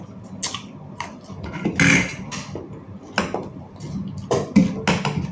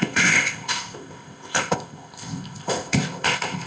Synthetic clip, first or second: second